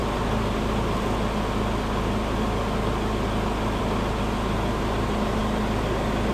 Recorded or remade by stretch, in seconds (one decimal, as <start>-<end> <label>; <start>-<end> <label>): 0.0-6.3 recorded

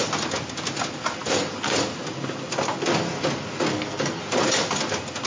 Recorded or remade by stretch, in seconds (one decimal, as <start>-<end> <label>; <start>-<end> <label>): 0.0-3.7 recorded; 3.7-4.2 remade; 4.2-5.3 recorded

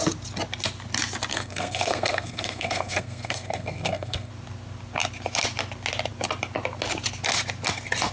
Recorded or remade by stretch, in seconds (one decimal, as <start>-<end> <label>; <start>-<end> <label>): 0.0-1.3 recorded; 1.3-4.3 remade; 4.3-8.1 recorded

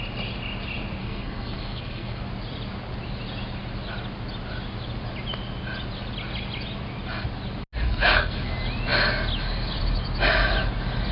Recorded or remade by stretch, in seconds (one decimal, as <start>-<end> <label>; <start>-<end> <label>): 0.0-1.0 recorded; 1.0-2.2 remade; 2.2-7.8 recorded; 7.8-8.5 remade; 8.5-11.1 recorded

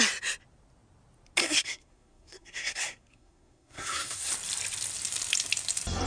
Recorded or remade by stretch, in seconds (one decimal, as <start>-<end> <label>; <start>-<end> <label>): 0.0-1.4 recorded; 1.4-4.3 remade; 4.3-6.1 recorded